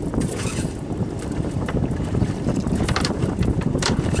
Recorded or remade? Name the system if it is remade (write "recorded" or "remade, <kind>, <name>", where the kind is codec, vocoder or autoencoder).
remade, vocoder, BigVGAN v2